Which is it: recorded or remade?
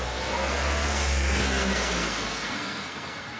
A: remade